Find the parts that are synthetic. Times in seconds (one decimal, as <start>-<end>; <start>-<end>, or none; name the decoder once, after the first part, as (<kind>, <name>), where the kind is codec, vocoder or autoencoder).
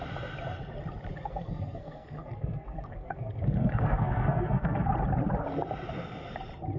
1.1-4.9 (codec, SNAC)